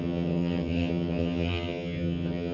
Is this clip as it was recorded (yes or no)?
no